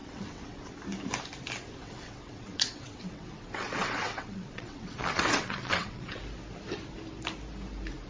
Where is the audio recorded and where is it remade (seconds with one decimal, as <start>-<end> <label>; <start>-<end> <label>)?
0.0-0.7 remade; 0.7-1.8 recorded; 1.8-6.2 remade; 6.2-8.1 recorded